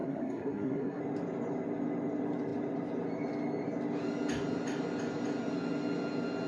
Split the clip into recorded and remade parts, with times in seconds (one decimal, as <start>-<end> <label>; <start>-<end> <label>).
0.0-1.0 remade; 1.0-6.5 recorded